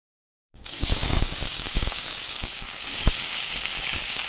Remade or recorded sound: remade